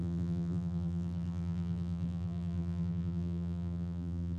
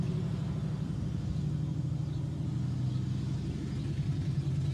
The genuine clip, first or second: second